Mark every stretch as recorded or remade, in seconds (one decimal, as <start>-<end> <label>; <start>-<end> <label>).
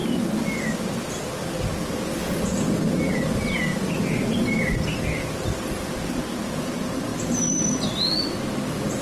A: 0.0-7.1 recorded; 7.1-8.4 remade; 8.4-9.0 recorded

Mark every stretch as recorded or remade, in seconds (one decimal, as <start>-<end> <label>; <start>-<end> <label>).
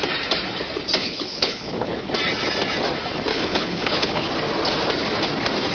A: 0.0-1.0 recorded; 1.0-2.1 remade; 2.1-3.3 recorded; 3.3-4.3 remade; 4.3-5.7 recorded